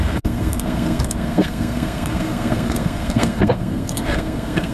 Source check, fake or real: fake